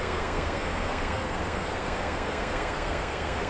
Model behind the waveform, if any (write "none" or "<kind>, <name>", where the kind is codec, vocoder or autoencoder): codec, SNAC